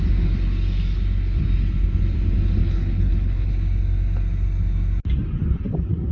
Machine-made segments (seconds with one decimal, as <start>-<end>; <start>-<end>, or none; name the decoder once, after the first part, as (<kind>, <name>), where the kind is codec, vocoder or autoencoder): 2.6-3.5 (codec, HILCodec)